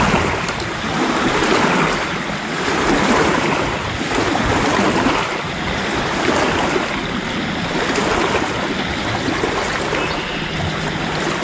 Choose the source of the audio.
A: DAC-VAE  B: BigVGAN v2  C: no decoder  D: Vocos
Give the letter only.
C